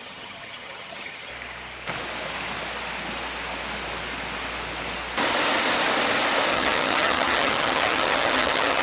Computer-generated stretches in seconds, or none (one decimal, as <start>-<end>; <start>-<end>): 0.0-1.3; 6.5-8.8